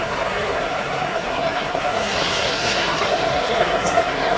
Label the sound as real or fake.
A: fake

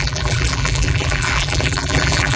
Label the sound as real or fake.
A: fake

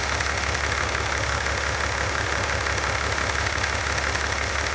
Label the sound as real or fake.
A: fake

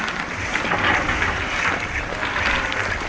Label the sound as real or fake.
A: real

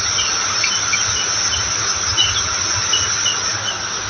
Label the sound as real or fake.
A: real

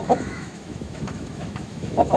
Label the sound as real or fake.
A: fake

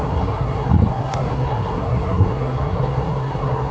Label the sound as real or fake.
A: fake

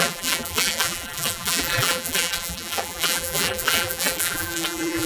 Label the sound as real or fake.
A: fake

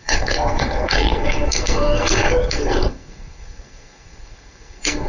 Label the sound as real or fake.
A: fake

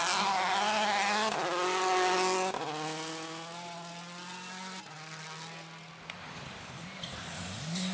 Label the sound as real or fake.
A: real